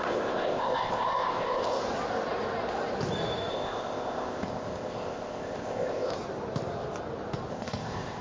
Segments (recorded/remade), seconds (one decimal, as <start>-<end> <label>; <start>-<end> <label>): 0.0-1.8 remade; 1.8-3.5 recorded; 3.5-6.1 remade; 6.1-7.5 recorded; 7.5-8.2 remade